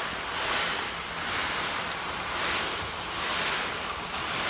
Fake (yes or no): no